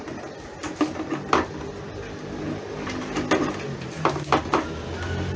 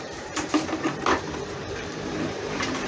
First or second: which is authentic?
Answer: first